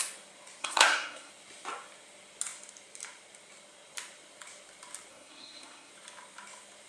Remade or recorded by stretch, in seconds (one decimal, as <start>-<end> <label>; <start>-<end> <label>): 0.0-0.6 recorded; 0.6-1.3 remade; 1.3-5.1 recorded; 5.1-5.9 remade; 5.9-6.9 recorded